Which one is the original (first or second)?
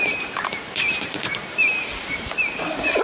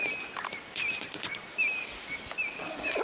second